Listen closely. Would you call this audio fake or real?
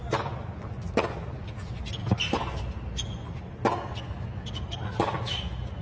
real